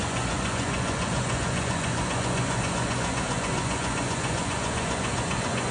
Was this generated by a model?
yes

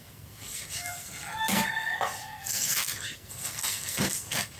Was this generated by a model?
yes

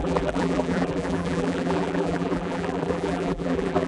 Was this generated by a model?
yes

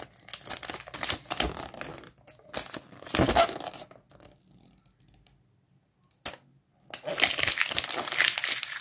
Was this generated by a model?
no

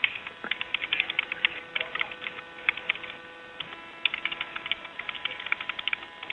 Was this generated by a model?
no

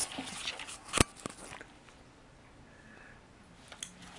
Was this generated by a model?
no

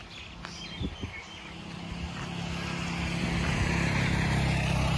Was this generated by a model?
no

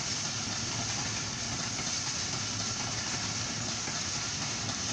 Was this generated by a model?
no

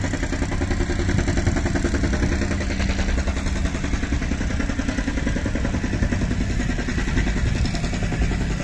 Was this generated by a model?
no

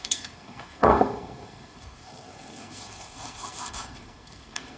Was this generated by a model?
yes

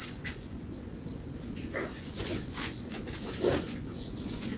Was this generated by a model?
yes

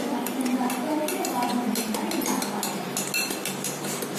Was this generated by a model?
no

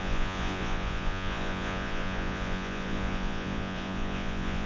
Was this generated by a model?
yes